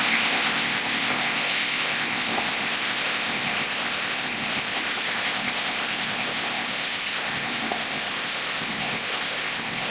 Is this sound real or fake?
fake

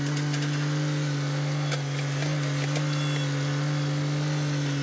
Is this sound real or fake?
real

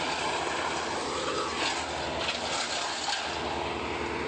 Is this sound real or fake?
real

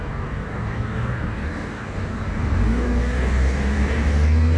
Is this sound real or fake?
fake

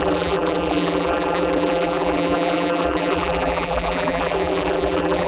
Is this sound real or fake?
fake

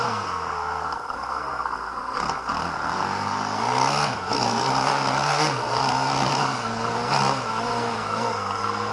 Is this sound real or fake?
fake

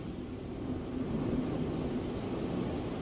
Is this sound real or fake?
real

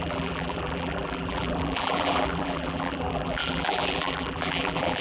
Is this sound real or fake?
fake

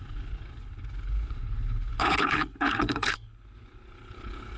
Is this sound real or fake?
fake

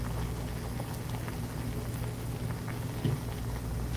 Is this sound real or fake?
real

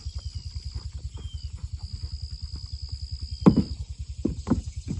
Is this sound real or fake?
real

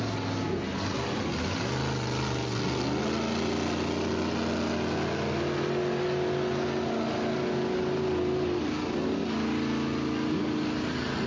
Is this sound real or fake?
real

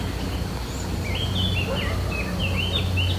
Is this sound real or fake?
real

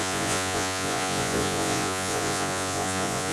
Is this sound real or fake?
fake